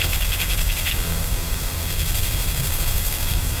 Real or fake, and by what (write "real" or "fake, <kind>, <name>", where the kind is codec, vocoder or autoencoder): fake, codec, SNAC